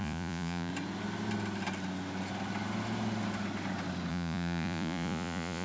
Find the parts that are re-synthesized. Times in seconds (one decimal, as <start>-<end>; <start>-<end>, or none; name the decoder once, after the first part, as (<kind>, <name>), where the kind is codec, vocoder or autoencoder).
0.0-0.7 (vocoder, Vocos); 4.1-5.6